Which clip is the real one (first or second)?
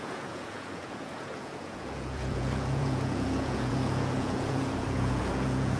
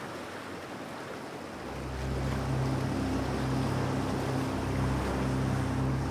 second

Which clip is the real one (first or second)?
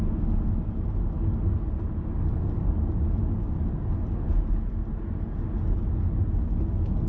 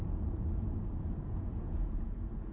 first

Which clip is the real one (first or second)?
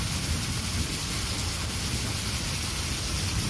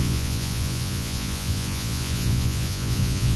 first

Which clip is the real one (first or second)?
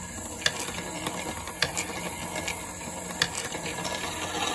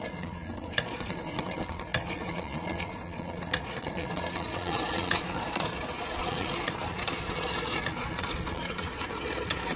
first